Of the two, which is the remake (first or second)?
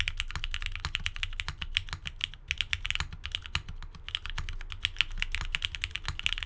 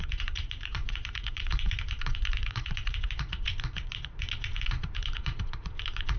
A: second